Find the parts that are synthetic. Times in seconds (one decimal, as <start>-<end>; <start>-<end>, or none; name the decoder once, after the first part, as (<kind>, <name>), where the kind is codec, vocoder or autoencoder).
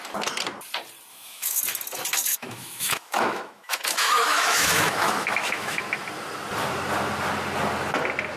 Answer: 1.1-1.6 (autoencoder, DAC-VAE); 2.3-5.8